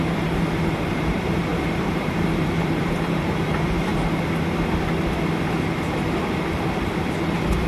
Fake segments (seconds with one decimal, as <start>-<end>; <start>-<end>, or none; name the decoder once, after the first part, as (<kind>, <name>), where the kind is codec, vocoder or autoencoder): 0.0-3.9 (vocoder, BigVGAN v2)